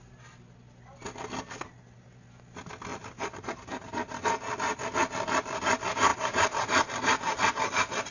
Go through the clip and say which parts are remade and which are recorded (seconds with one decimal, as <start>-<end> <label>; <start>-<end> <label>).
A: 0.0-2.9 recorded; 2.9-4.8 remade; 4.8-6.1 recorded; 6.1-8.1 remade